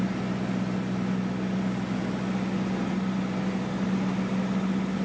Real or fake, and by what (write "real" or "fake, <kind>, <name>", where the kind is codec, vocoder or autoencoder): real